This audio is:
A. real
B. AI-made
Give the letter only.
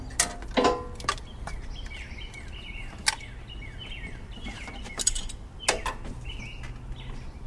A